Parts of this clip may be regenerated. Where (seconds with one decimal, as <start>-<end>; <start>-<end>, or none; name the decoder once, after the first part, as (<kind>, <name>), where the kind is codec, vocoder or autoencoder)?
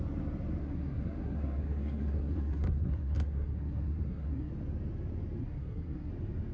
0.6-4.5 (codec, SNAC); 5.4-6.1